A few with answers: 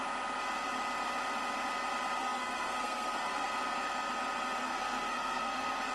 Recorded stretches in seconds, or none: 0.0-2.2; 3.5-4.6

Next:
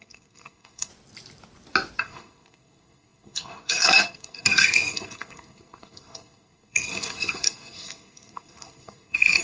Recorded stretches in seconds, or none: 0.9-2.0

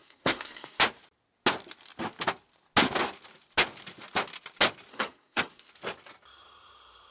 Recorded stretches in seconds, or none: 0.8-4.9; 5.7-7.1

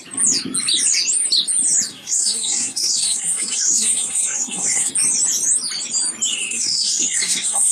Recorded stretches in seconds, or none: 0.0-1.9; 4.9-6.3